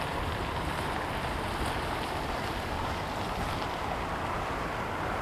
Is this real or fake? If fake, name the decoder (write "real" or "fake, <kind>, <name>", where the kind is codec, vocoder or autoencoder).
real